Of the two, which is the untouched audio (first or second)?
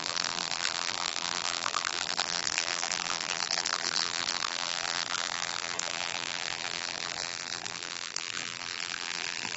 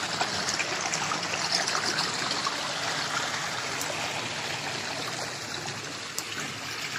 second